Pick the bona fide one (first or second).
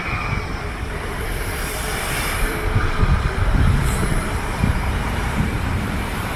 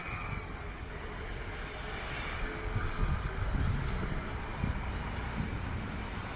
second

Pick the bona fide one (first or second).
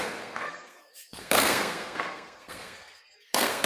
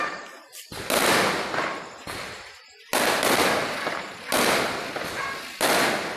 second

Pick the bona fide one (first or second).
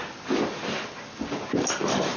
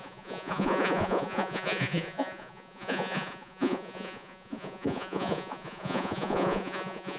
first